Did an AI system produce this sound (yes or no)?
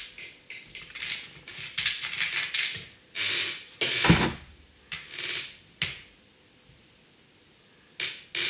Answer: no